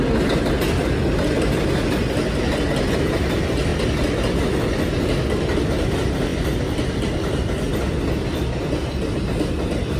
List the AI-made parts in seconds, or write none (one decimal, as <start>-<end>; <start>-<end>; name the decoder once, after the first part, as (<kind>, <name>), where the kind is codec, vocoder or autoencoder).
none